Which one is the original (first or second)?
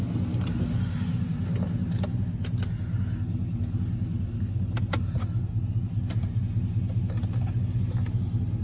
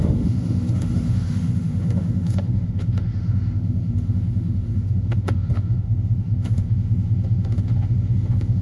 first